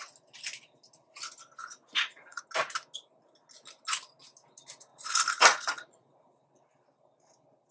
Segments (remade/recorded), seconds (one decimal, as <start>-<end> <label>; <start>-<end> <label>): 0.0-1.6 recorded; 1.6-2.4 remade; 2.4-4.9 recorded; 4.9-6.1 remade; 6.1-7.7 recorded